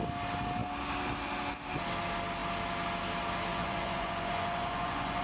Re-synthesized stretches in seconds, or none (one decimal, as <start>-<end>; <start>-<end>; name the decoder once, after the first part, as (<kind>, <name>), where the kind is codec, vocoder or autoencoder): 3.5-5.2 (vocoder, Vocos)